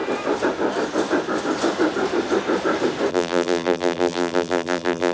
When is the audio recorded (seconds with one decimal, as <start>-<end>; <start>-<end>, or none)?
0.0-3.1